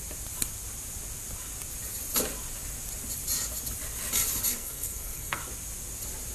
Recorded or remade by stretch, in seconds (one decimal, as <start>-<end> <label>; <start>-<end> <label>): 0.0-4.5 recorded; 4.5-5.4 remade; 5.4-6.3 recorded